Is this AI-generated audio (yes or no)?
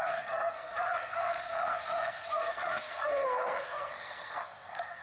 yes